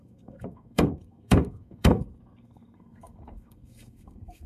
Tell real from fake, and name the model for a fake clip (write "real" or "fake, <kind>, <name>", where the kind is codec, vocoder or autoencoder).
fake, codec, SNAC